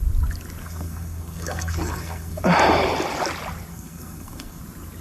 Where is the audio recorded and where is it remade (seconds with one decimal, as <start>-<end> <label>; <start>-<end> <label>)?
0.0-0.6 recorded; 0.6-2.4 remade; 2.4-3.7 recorded; 3.7-4.6 remade; 4.6-5.0 recorded